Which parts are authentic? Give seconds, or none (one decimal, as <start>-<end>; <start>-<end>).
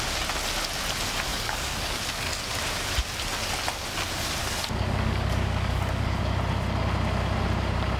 0.0-1.3; 2.4-4.4; 6.2-8.0